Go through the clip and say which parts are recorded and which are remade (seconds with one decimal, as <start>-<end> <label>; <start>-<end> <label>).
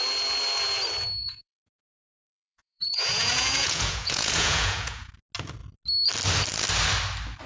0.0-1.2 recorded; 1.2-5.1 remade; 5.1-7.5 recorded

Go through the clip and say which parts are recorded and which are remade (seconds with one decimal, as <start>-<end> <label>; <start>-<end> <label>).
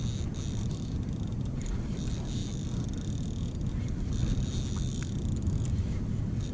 0.0-6.5 recorded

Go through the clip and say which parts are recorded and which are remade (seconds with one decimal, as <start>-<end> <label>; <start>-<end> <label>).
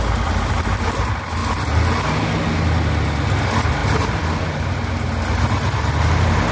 0.0-6.5 recorded